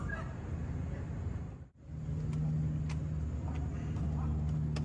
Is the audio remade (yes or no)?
no